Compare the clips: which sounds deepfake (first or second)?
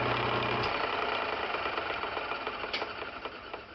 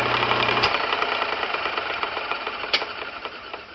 second